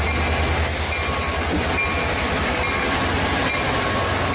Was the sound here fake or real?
real